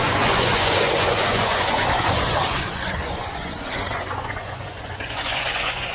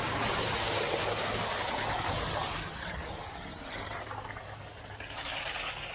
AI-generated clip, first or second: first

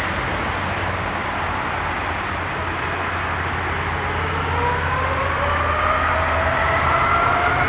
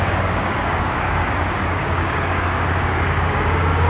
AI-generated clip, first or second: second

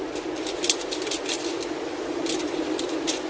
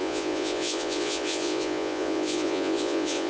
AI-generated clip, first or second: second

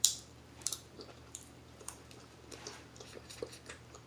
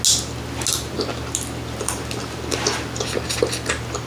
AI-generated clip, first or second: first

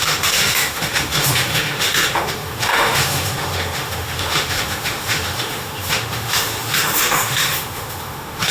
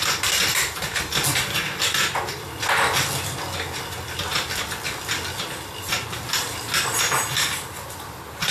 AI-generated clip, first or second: first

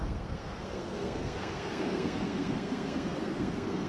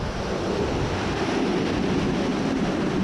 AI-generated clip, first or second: first